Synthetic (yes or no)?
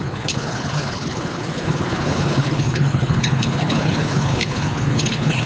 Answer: yes